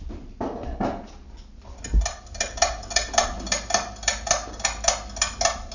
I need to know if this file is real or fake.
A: real